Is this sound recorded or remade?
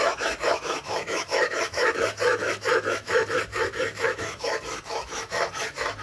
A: remade